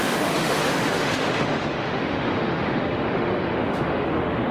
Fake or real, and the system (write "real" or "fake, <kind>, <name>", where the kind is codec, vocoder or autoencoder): fake, autoencoder, DAC-VAE